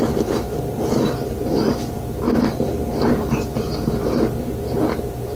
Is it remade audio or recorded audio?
recorded